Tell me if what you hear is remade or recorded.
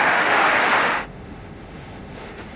remade